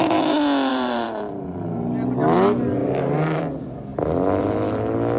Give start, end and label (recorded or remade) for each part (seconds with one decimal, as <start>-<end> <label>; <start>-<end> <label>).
0.0-0.7 recorded; 0.7-1.4 remade; 1.4-2.8 recorded; 2.8-3.4 remade; 3.4-5.2 recorded

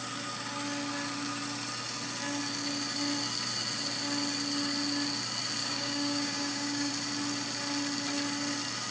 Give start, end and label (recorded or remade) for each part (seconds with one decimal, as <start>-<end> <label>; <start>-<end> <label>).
0.0-5.6 recorded; 5.6-6.9 remade; 6.9-8.9 recorded

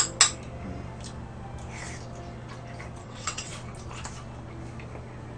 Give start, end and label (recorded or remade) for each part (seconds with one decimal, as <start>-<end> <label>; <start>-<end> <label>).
0.0-3.0 recorded; 3.0-3.5 remade; 3.5-5.4 recorded

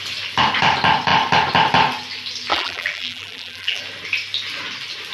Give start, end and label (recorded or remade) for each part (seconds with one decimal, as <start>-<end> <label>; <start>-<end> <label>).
0.0-2.5 recorded; 2.5-3.8 remade; 3.8-5.1 recorded